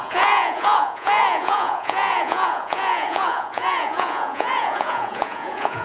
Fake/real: fake